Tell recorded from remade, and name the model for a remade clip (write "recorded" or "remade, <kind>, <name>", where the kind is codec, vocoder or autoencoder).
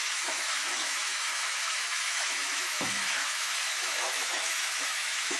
remade, autoencoder, DAC-VAE